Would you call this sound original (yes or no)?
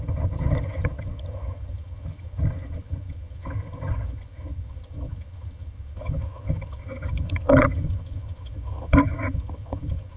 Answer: no